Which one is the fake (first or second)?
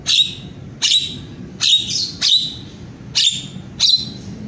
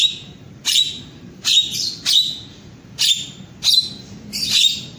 second